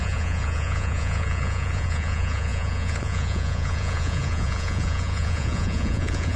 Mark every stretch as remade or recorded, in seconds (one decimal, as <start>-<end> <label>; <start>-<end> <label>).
0.0-6.4 remade